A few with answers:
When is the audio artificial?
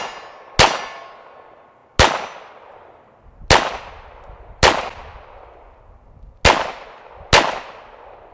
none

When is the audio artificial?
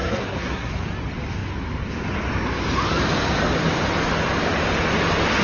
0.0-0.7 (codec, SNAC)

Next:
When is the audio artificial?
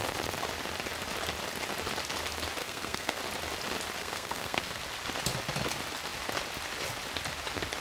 2.6-3.2 (codec, SNAC); 4.0-4.8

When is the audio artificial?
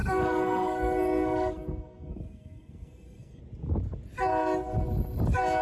0.0-3.4 (codec, SNAC)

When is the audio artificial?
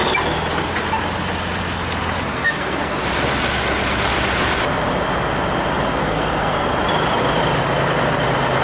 2.3-2.9 (codec, SNAC); 6.0-6.7